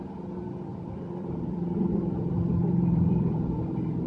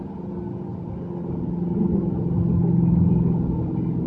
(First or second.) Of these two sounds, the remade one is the first